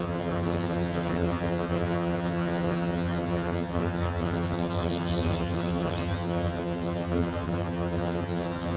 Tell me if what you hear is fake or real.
fake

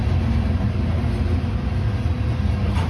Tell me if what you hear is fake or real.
real